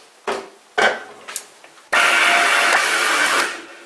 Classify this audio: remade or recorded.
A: recorded